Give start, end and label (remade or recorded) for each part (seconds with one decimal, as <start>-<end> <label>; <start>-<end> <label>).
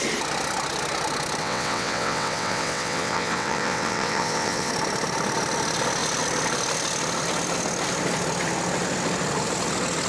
0.0-1.4 recorded; 1.4-4.7 remade; 4.7-10.1 recorded